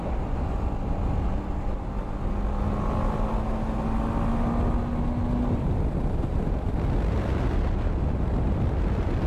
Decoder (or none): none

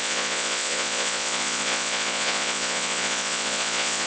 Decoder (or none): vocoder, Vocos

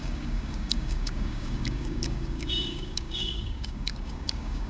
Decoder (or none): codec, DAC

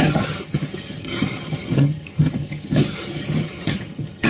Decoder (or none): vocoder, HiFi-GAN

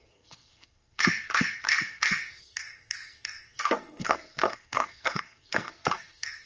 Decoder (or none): codec, SNAC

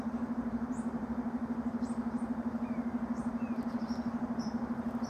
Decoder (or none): vocoder, BigVGAN v2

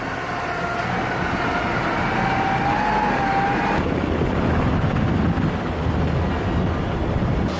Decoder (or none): none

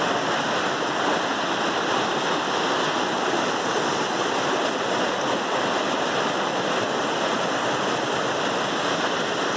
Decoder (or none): none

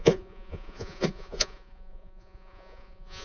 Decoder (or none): vocoder, Vocos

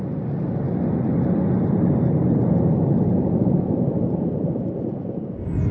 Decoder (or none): none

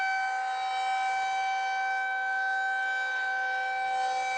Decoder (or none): none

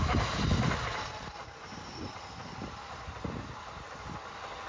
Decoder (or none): none